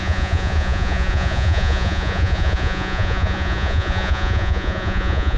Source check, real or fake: fake